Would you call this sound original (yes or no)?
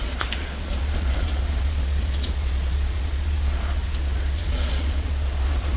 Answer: no